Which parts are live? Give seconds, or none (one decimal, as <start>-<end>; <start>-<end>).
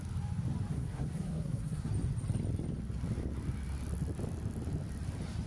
0.0-0.7; 1.9-5.5